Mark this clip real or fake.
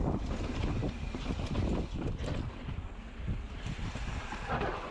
real